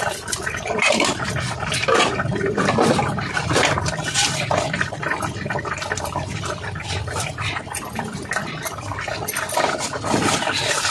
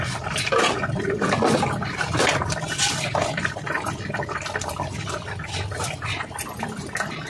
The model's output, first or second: first